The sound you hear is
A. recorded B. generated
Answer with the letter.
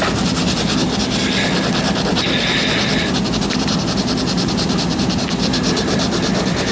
A